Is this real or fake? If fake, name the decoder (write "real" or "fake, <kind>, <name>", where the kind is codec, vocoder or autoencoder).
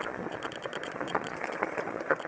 fake, vocoder, Vocos